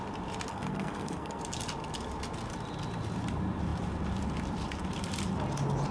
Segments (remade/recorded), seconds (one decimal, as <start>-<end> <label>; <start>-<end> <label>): 0.0-0.5 recorded; 0.5-1.4 remade; 1.4-5.9 recorded